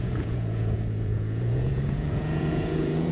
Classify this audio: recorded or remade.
remade